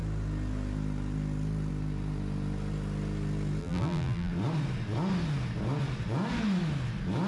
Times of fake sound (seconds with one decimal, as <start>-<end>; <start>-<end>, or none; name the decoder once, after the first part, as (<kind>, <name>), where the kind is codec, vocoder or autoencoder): 3.6-4.3 (vocoder, BigVGAN v2)